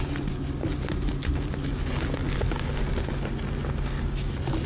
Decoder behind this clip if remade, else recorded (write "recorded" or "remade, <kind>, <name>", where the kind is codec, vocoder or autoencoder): recorded